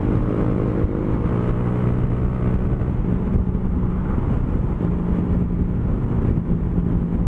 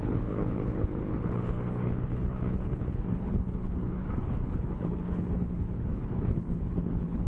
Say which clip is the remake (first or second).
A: second